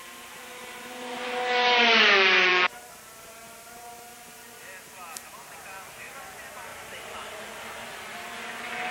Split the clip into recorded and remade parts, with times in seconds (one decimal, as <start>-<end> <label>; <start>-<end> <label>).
0.0-8.9 recorded